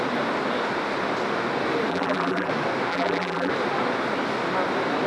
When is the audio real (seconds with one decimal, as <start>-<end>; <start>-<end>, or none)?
0.0-1.9; 2.5-2.9; 3.5-5.1